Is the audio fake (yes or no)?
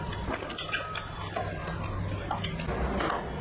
no